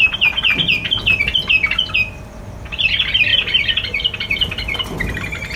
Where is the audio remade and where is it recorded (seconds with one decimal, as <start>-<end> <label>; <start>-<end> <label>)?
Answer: 0.0-5.6 recorded